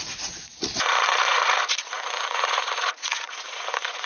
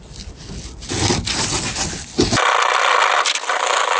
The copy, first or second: first